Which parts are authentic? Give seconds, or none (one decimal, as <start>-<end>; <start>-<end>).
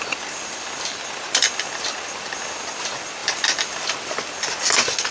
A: none